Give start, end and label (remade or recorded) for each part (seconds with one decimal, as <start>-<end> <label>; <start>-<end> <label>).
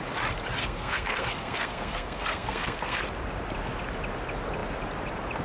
0.0-0.6 recorded; 0.6-3.0 remade; 3.0-5.4 recorded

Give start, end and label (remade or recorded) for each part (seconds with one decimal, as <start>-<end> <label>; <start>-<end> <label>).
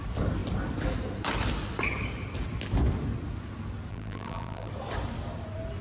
0.0-3.9 recorded; 3.9-4.7 remade; 4.7-5.8 recorded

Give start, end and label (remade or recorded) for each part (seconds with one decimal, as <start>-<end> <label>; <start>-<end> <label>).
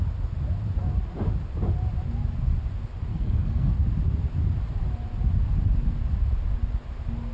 0.0-3.1 recorded; 3.1-3.7 remade; 3.7-7.3 recorded